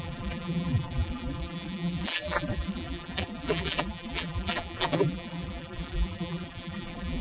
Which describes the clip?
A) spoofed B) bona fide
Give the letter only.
A